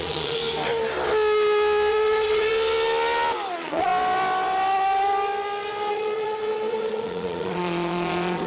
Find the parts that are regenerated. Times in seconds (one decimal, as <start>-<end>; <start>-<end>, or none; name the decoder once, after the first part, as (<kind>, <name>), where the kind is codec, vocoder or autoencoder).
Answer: 0.0-0.4 (vocoder, Vocos); 1.9-2.5; 3.5-3.9; 5.9-8.5